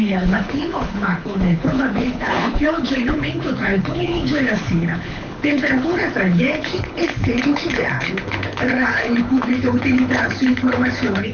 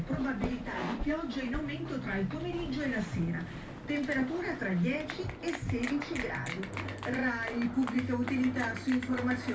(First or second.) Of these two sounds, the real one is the second